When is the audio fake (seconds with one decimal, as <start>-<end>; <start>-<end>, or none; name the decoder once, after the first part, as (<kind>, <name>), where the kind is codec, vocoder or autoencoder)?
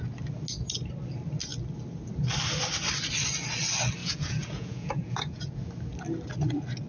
4.0-5.6 (vocoder, Vocos)